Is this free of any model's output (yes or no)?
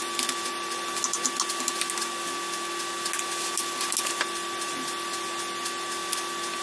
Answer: yes